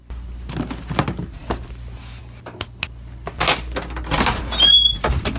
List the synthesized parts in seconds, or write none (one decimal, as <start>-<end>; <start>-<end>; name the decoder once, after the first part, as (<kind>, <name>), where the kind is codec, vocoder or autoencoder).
none